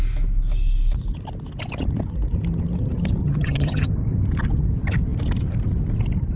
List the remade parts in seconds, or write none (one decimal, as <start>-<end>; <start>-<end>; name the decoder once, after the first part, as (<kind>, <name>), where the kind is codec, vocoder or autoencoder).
3.2-3.9 (vocoder, HiFi-GAN)